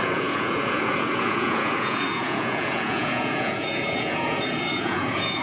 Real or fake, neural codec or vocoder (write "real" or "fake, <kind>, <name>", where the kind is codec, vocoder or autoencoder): fake, vocoder, Vocos